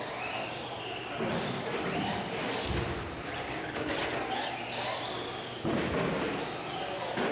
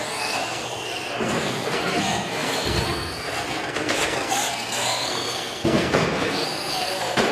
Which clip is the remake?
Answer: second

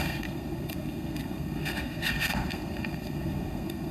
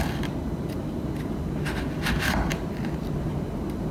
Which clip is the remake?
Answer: first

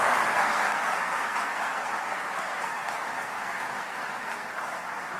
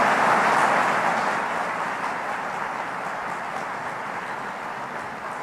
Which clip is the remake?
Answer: first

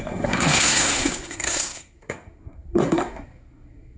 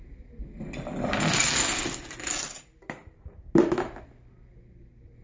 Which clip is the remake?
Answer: first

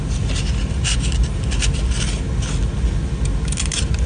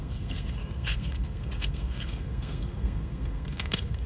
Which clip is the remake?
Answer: second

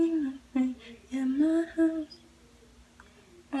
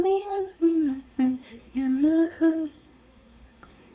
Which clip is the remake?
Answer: second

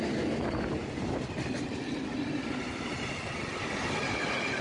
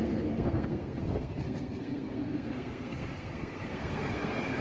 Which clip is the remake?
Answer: second